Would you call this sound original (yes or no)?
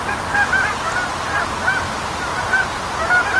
yes